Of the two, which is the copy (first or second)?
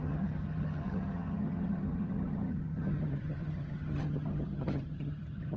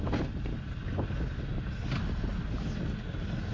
first